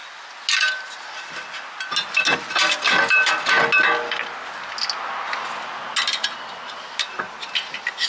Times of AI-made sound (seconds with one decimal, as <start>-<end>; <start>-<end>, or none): none